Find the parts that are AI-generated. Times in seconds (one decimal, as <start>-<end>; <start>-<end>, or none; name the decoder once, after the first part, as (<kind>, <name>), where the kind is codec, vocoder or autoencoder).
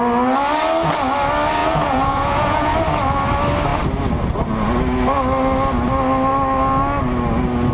1.6-2.7 (vocoder, Vocos)